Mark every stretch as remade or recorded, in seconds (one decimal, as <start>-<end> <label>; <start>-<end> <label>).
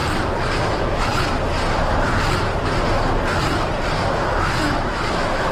0.0-0.6 recorded; 0.6-1.1 remade; 1.1-4.4 recorded; 4.4-5.5 remade